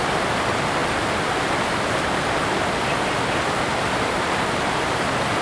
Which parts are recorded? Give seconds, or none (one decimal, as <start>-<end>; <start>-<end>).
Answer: 0.0-5.4